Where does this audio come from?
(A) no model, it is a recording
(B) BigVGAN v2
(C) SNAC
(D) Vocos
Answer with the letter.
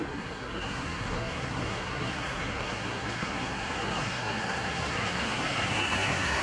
C